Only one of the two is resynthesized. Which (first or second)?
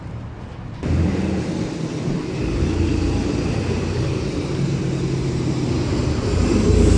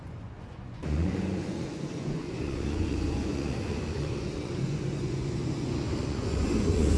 second